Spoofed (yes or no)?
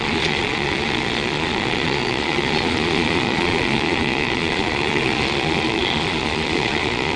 yes